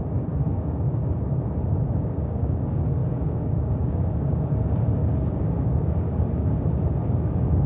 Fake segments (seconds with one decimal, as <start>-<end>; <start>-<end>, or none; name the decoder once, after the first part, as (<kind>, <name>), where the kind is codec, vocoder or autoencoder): 0.0-1.0 (codec, DAC); 1.6-7.7